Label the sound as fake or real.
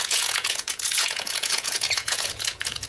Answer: fake